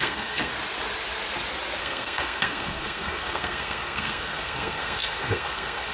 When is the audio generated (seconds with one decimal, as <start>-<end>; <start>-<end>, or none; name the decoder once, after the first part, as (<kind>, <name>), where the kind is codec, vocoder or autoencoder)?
0.0-0.5 (codec, SNAC); 1.8-5.9